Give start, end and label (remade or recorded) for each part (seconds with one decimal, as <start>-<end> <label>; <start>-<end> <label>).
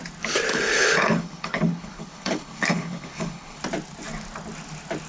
0.0-0.5 recorded; 0.5-3.6 remade; 3.6-5.1 recorded